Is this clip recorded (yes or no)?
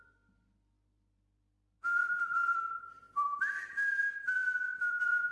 yes